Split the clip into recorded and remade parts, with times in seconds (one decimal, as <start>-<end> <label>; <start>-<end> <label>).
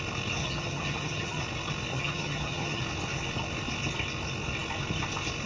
0.0-0.4 recorded; 0.4-1.4 remade; 1.4-1.9 recorded; 1.9-2.8 remade; 2.8-5.5 recorded